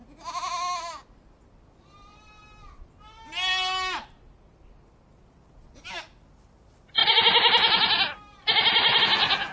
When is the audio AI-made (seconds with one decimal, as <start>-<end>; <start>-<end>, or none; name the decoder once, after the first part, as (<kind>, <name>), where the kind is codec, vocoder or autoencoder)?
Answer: none